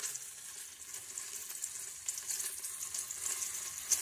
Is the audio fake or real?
real